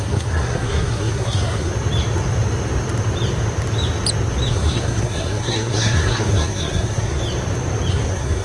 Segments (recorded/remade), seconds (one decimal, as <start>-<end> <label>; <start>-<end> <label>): 0.0-1.7 remade; 1.7-4.5 recorded; 4.5-7.2 remade; 7.2-7.9 recorded; 7.9-8.4 remade